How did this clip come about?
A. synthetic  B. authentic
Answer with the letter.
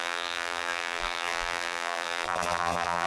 A